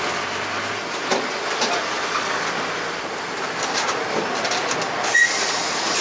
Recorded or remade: recorded